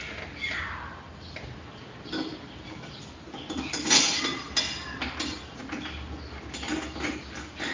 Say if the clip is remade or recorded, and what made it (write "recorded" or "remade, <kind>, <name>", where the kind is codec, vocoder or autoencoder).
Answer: recorded